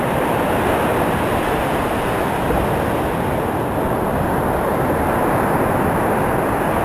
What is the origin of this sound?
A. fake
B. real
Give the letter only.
B